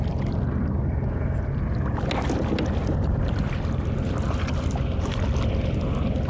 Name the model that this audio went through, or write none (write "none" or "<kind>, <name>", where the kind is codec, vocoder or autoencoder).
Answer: none